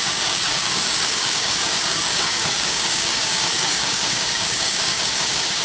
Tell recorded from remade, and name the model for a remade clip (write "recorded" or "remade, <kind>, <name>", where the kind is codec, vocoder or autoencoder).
remade, codec, DAC